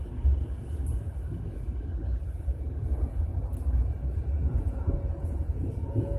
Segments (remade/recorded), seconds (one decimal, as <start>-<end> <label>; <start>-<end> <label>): 0.0-2.4 recorded; 2.4-3.3 remade; 3.3-4.2 recorded; 4.2-6.2 remade